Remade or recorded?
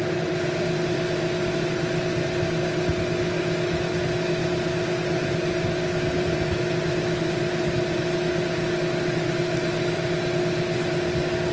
recorded